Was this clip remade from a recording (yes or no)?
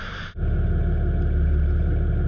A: no